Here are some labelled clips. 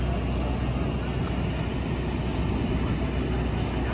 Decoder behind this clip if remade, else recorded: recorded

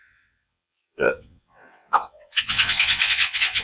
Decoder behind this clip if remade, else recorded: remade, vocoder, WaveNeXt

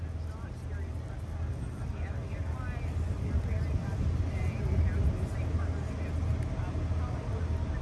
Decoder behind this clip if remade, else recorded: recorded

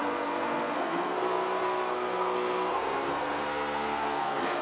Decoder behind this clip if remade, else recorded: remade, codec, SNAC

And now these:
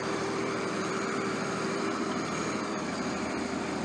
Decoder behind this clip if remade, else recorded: remade, vocoder, BigVGAN v2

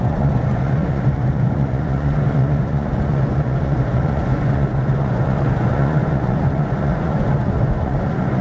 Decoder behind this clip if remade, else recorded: remade, vocoder, Vocos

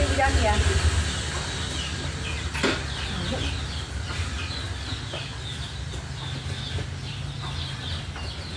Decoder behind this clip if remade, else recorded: recorded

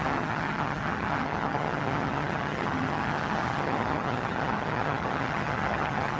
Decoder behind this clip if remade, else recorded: remade, vocoder, HiFi-GAN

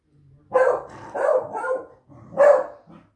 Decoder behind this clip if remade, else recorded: recorded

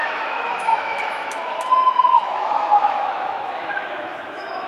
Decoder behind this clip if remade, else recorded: remade, autoencoder, DAC-VAE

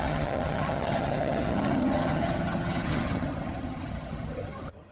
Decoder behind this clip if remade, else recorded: remade, vocoder, HiFi-GAN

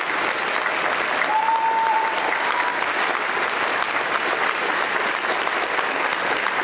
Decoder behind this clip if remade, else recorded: recorded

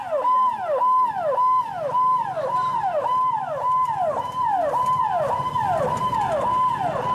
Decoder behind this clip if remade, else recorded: recorded